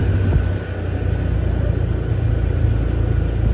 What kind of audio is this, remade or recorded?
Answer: recorded